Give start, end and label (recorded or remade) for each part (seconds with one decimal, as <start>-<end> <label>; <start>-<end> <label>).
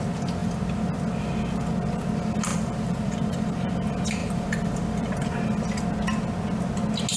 0.0-2.5 recorded; 2.5-3.5 remade; 3.5-4.2 recorded; 4.2-5.1 remade; 5.1-7.2 recorded